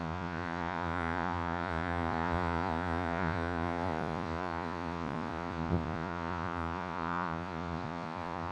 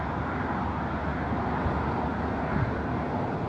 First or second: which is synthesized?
first